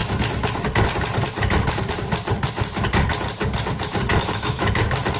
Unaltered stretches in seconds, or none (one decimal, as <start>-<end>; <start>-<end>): 0.0-4.1; 4.8-5.2

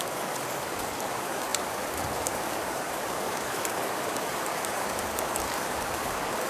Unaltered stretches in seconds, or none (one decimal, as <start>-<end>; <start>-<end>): none

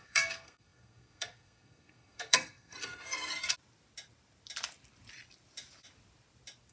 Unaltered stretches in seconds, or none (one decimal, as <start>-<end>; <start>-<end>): 3.3-6.7

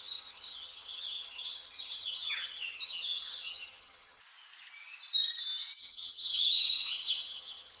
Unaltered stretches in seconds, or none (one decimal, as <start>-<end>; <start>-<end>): 4.2-5.8

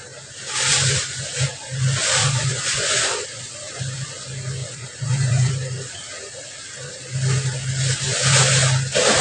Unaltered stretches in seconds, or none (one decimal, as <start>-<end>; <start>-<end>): 0.0-2.2; 3.4-4.6; 5.5-9.2

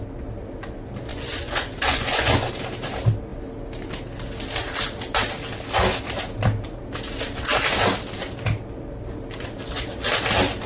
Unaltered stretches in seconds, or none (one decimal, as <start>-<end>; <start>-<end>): 0.0-1.1; 2.5-10.7